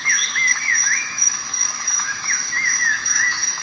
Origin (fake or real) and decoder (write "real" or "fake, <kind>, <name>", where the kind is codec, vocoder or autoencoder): fake, autoencoder, DAC-VAE